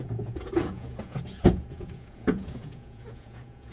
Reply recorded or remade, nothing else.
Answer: remade